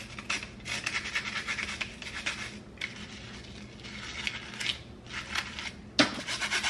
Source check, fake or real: real